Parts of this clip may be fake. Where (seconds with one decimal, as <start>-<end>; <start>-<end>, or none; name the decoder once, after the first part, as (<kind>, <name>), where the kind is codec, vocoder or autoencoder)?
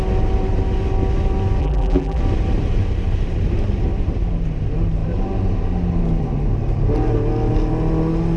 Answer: 1.6-2.2 (vocoder, BigVGAN v2)